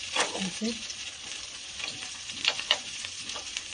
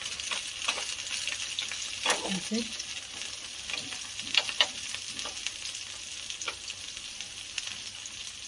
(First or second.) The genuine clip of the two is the second